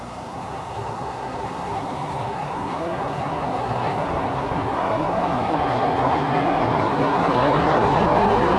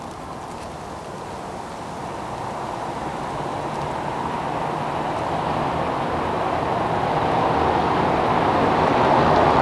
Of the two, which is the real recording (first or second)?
second